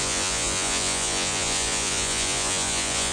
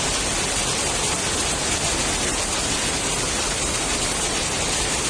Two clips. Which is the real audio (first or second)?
second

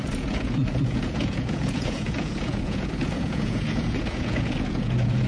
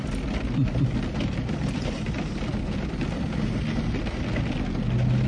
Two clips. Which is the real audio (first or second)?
second